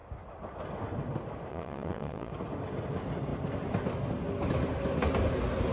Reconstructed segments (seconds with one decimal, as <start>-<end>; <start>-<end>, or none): 1.5-2.3